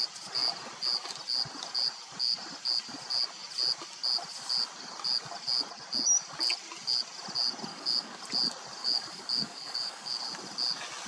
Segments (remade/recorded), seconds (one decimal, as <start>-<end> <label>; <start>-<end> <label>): 0.0-7.7 recorded; 7.7-8.2 remade; 8.2-8.8 recorded; 8.8-10.1 remade; 10.1-11.1 recorded